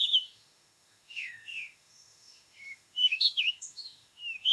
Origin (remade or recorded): remade